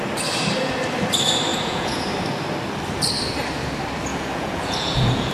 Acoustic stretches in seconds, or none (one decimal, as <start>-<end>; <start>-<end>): 0.0-1.5; 2.0-4.1